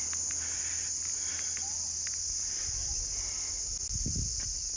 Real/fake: real